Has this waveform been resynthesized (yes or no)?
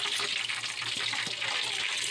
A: no